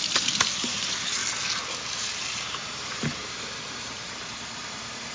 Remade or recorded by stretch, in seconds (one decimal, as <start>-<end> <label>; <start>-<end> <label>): 0.0-1.2 remade; 1.2-2.0 recorded; 2.0-5.1 remade